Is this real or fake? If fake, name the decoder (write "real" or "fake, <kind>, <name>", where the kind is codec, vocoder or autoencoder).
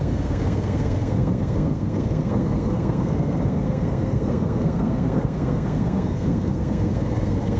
fake, codec, SNAC